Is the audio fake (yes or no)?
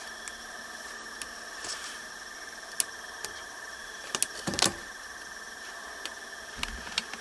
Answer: no